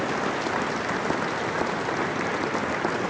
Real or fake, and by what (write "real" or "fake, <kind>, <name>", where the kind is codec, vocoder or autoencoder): real